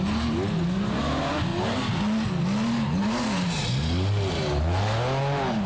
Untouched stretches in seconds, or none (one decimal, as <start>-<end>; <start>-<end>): 0.0-5.7